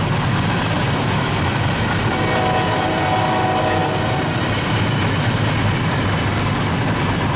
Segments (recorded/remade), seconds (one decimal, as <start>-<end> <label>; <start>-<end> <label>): 0.0-7.4 recorded